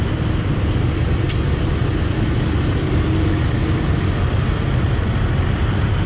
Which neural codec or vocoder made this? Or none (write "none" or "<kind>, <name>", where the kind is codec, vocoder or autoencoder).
none